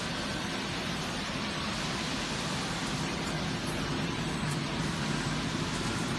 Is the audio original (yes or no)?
yes